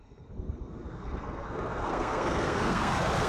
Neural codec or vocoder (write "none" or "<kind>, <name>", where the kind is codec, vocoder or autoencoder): codec, SNAC